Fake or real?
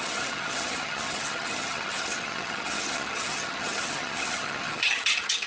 fake